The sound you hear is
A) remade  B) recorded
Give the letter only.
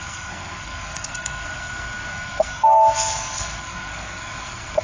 A